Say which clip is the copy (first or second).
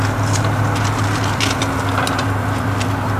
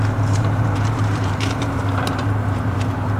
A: second